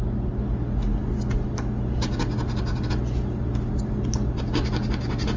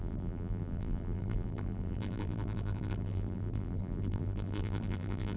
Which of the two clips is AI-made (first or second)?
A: second